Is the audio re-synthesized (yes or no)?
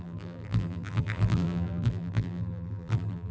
yes